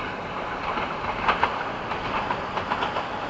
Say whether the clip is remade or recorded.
recorded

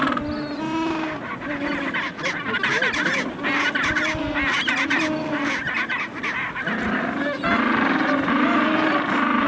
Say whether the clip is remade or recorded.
recorded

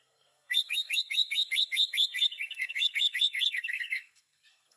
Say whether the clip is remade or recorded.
remade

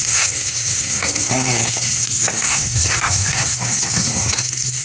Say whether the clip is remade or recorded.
remade